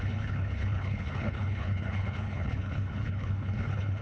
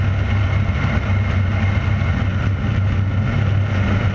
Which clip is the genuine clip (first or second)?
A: second